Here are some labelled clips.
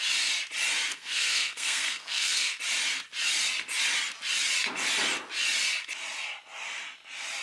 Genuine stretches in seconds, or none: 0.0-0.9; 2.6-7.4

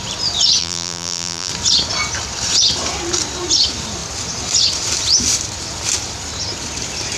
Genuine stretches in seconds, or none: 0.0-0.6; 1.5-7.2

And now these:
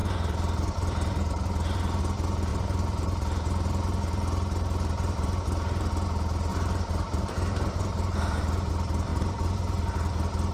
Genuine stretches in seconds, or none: 2.0-2.5; 5.9-6.5; 8.7-9.1; 9.9-10.5

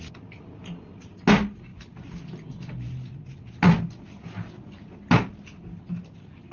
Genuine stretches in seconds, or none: 0.0-6.5

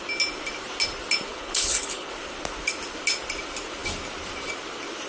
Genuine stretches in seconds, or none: 0.0-1.3; 2.1-5.1

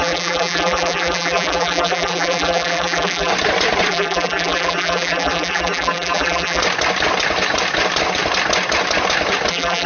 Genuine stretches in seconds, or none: 3.3-3.9; 6.6-9.5

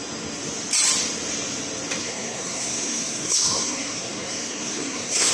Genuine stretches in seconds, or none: 0.0-2.0

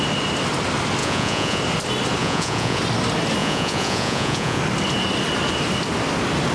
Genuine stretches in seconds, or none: 0.0-1.0; 1.6-2.2; 2.8-3.4; 4.6-6.5